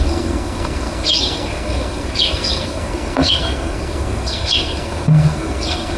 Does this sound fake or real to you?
fake